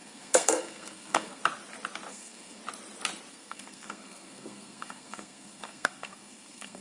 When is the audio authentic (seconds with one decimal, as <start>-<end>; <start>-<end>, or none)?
1.4-2.1; 2.6-3.3